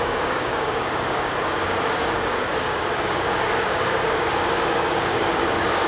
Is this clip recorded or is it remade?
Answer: remade